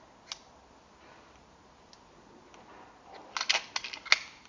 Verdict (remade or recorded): recorded